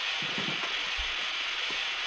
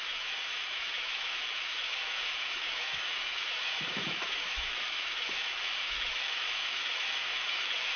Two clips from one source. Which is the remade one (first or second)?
second